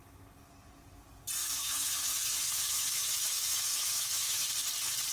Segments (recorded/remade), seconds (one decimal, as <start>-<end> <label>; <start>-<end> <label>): 0.0-1.4 recorded; 1.4-4.5 remade; 4.5-5.1 recorded

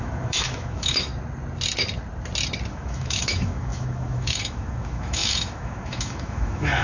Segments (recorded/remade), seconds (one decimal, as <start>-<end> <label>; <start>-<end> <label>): 0.0-1.1 remade; 1.1-2.7 recorded; 2.7-6.8 remade

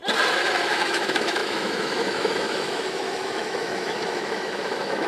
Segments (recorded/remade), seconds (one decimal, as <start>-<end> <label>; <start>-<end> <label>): 0.0-0.7 recorded; 0.7-5.1 remade

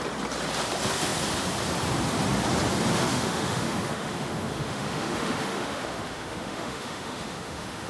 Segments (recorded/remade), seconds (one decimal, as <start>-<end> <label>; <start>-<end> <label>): 0.0-2.9 recorded; 2.9-7.9 remade

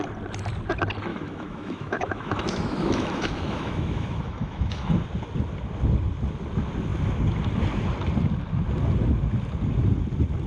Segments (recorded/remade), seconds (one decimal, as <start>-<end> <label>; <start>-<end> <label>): 0.0-1.1 recorded; 1.1-4.9 remade; 4.9-10.5 recorded